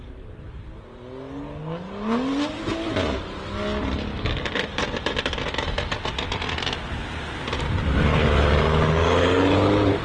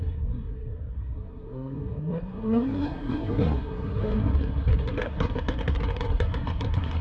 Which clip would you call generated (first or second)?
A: second